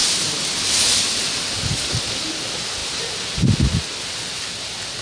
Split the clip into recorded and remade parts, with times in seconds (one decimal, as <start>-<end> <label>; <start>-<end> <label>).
0.0-5.0 recorded